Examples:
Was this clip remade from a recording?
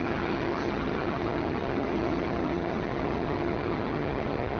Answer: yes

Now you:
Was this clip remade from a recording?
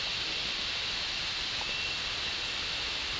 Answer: no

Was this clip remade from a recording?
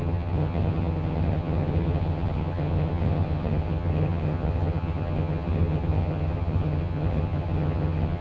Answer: yes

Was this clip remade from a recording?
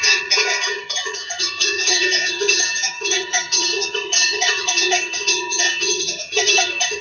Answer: yes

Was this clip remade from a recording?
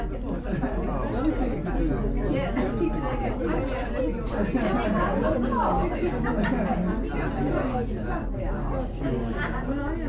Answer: no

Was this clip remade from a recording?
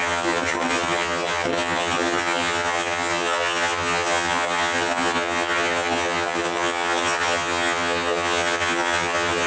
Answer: yes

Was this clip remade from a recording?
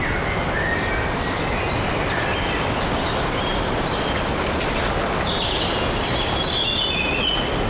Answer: no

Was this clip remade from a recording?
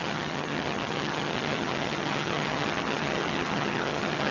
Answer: yes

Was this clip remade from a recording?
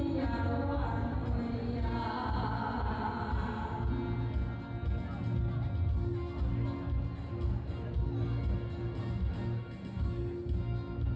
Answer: no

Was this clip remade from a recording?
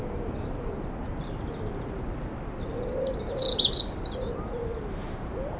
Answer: no